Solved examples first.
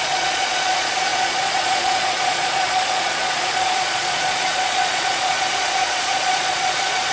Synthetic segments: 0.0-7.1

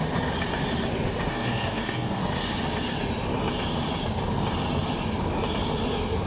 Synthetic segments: 1.3-2.2

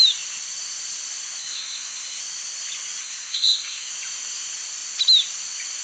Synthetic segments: 1.4-2.2; 3.0-3.9

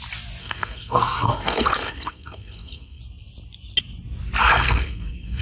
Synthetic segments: 0.4-3.0; 4.4-5.4